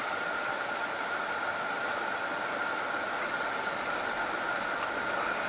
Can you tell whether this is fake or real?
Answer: real